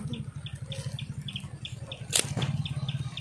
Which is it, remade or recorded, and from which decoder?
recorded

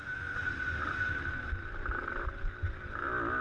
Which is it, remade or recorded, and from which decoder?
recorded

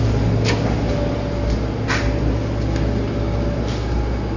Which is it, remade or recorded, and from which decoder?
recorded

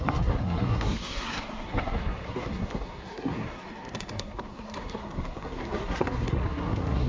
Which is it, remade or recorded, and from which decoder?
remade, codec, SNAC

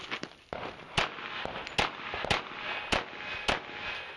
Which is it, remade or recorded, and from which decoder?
recorded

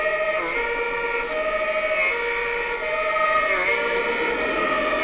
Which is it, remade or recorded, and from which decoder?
recorded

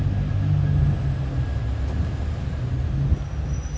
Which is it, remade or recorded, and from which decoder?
recorded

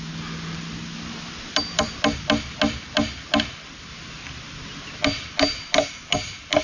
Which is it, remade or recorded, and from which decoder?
recorded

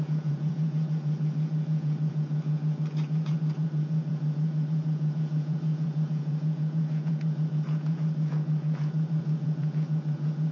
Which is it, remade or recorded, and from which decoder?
remade, vocoder, Vocos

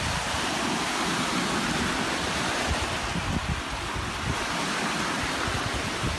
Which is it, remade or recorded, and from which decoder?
recorded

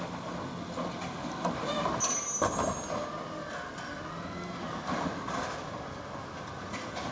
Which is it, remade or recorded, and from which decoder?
recorded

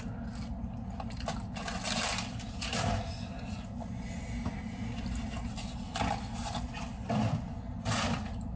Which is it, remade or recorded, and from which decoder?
recorded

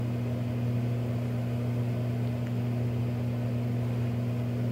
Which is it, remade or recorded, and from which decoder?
recorded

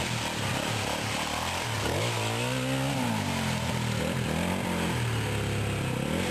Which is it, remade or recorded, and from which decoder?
recorded